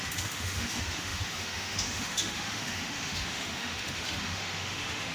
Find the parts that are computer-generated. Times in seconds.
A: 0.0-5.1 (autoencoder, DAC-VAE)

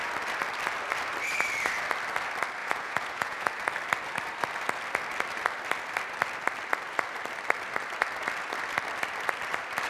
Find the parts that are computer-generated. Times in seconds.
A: 2.6-3.5 (vocoder, Vocos)

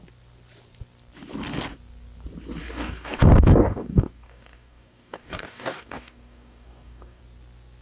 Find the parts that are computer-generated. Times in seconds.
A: 2.6-7.2 (codec, DAC)

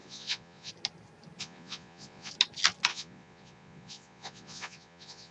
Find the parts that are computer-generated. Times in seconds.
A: 0.0-0.7 (vocoder, Vocos); 1.4-2.3; 2.9-5.3

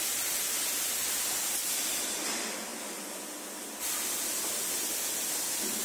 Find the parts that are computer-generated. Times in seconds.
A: none

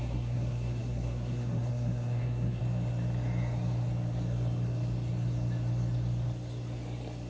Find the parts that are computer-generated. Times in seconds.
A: 0.0-2.6 (codec, SNAC)